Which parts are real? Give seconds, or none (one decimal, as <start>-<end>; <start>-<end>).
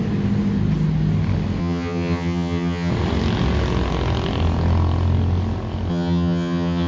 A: 0.0-1.6; 2.9-5.9